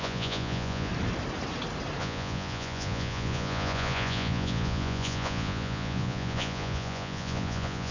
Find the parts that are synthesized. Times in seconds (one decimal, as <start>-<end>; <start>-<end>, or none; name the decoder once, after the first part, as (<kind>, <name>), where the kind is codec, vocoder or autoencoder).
0.0-0.9 (vocoder, Vocos); 2.0-7.9